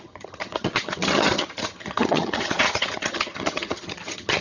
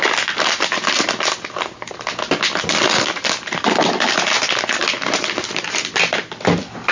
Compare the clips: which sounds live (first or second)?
second